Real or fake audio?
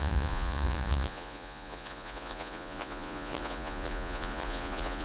fake